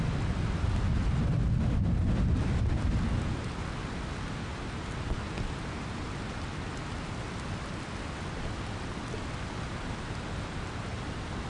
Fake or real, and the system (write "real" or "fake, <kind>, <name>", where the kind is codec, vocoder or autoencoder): real